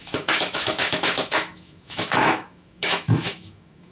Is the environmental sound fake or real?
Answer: fake